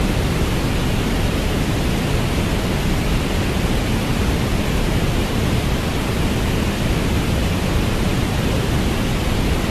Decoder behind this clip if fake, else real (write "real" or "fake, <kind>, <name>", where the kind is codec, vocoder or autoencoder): real